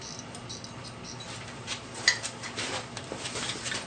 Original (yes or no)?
yes